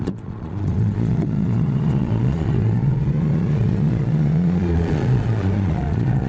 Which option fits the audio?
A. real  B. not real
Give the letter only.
B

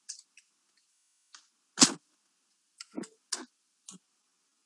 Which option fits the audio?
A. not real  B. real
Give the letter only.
B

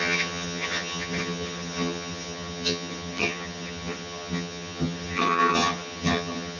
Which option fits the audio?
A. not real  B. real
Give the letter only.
A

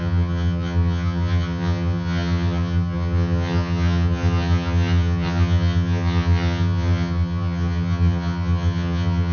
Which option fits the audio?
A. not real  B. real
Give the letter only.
A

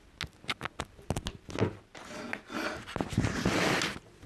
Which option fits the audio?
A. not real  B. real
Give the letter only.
B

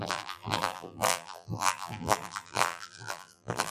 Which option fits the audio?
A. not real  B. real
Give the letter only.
A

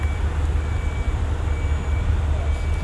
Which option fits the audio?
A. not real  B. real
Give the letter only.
B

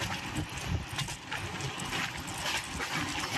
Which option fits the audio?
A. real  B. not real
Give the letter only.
A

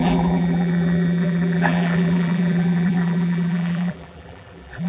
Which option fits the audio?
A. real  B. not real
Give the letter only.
B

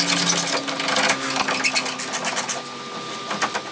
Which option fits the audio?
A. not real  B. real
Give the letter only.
B